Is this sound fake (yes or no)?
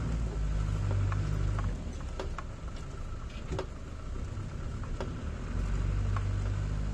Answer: no